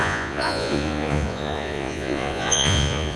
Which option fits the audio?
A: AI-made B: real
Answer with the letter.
A